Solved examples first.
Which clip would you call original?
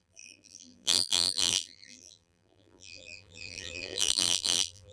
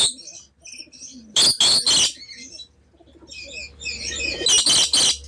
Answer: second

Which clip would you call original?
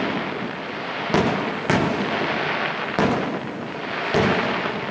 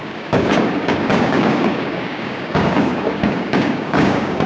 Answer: first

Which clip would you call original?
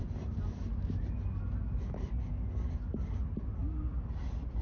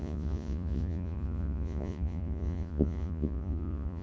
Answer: first